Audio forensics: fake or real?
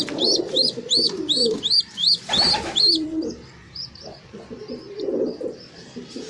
fake